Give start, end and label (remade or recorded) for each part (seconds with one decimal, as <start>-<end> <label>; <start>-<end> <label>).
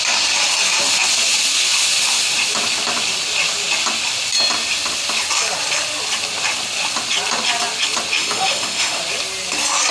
0.0-8.2 recorded; 8.2-9.0 remade; 9.0-9.9 recorded